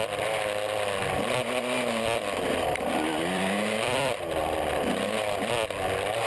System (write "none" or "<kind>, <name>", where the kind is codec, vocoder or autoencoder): none